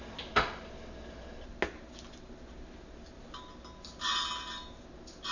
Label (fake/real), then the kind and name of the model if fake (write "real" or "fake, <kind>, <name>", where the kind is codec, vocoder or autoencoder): real